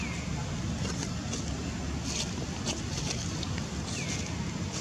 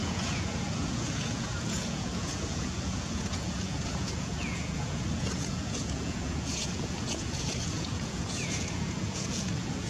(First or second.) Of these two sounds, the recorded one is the first